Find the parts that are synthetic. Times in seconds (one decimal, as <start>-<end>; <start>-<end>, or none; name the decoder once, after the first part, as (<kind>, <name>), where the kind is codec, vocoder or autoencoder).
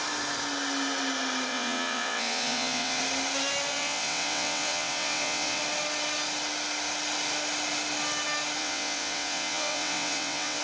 1.5-3.0 (vocoder, WaveNeXt); 3.7-5.6; 8.6-10.6